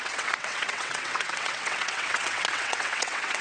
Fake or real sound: fake